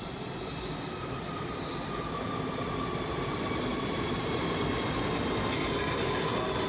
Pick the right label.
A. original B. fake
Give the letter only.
A